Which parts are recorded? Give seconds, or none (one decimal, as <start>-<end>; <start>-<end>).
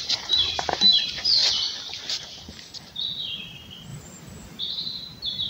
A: 1.4-3.4; 3.9-4.6